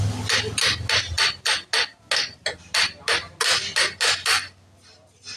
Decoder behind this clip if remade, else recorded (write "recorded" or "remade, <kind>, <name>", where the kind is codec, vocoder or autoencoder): recorded